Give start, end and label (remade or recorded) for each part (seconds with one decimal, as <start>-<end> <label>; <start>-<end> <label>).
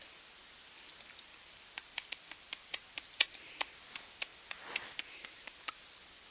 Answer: 0.0-6.3 recorded